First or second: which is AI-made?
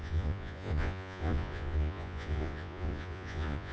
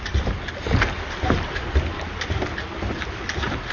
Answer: first